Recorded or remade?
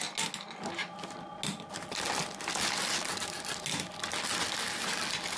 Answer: recorded